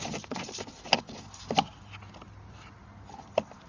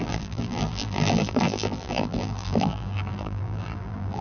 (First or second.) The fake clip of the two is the second